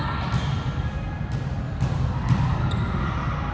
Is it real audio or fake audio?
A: real